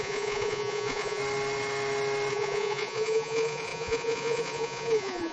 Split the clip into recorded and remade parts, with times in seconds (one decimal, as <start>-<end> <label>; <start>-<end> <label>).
0.0-1.2 remade; 1.2-2.3 recorded; 2.3-5.3 remade